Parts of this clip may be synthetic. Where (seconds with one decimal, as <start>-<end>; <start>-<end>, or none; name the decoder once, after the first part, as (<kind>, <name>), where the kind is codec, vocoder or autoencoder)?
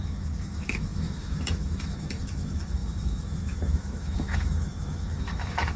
0.0-5.8 (autoencoder, DAC-VAE)